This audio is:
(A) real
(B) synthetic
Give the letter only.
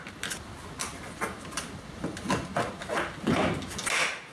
A